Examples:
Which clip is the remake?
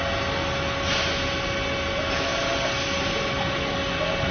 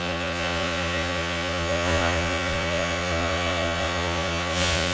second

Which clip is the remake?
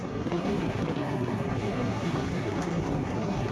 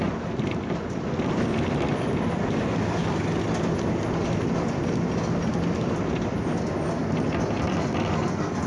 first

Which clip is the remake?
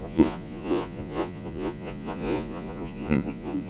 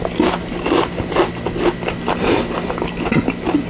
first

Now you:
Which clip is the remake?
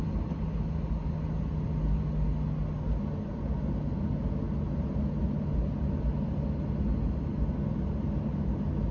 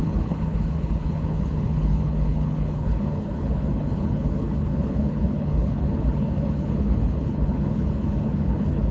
second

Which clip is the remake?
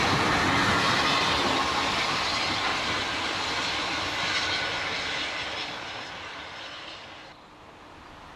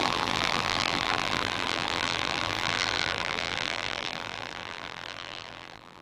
second